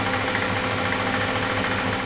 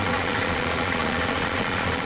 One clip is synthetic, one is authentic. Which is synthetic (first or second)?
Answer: second